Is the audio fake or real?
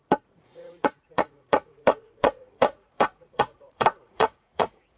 fake